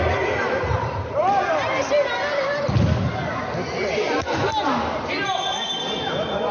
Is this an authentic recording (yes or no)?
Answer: yes